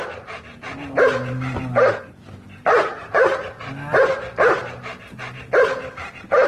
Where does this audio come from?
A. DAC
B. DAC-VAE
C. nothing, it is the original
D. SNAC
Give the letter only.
C